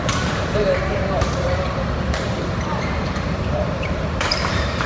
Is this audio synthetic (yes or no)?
yes